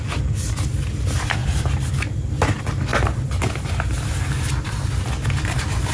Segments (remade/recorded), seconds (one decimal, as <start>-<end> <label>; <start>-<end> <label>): 0.0-1.4 recorded; 1.4-1.9 remade; 1.9-5.9 recorded